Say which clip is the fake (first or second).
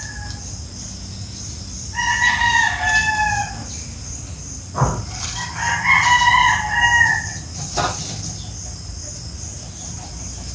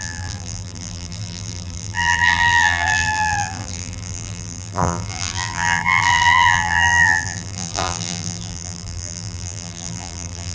second